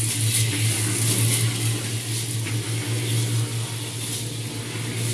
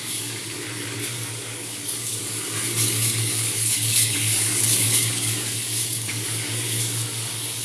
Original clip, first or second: first